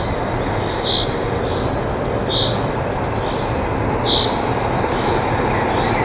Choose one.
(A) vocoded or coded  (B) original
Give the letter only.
B